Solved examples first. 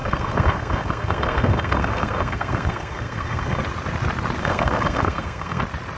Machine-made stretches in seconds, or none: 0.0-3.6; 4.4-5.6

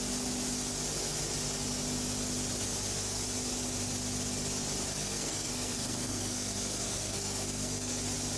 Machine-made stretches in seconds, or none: 4.9-8.0

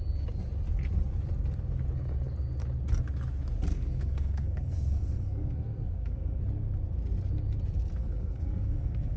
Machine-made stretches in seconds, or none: 3.7-6.4; 8.0-9.2